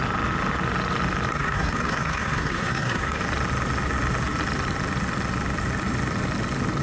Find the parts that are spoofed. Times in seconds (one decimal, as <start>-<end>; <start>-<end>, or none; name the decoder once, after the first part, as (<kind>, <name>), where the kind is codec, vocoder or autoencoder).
1.3-3.2 (codec, SNAC)